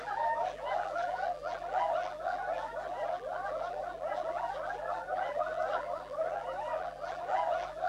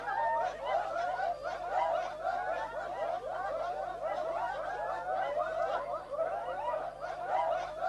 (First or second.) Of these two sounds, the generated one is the first